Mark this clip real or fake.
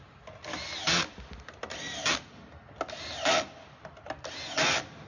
real